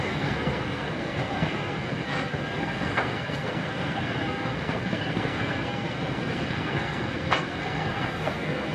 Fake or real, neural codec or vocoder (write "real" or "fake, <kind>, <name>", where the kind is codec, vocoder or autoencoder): fake, codec, SNAC